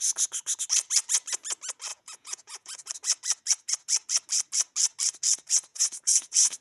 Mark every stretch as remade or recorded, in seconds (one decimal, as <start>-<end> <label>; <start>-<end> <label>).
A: 0.0-1.9 recorded; 1.9-2.9 remade; 2.9-5.7 recorded; 5.7-6.6 remade